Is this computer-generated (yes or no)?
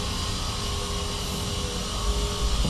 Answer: no